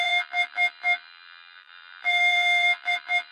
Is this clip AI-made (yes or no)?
yes